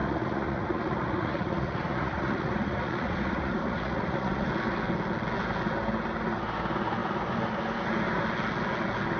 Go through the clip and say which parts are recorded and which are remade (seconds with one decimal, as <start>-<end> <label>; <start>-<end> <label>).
0.0-4.5 remade; 4.5-9.2 recorded